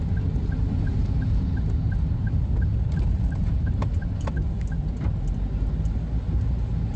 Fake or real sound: real